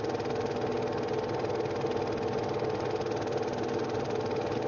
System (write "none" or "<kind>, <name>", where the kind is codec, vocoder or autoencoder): none